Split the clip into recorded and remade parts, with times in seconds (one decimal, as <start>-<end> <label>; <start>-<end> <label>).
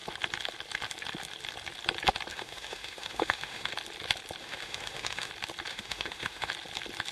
0.0-2.3 recorded; 2.3-3.7 remade; 3.7-4.4 recorded; 4.4-5.3 remade; 5.3-5.7 recorded; 5.7-6.5 remade; 6.5-7.1 recorded